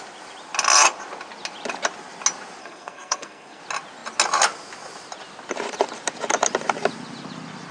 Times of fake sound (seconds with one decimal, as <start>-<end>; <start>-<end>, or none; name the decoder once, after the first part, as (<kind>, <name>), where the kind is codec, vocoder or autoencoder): 2.6-3.6 (codec, SNAC)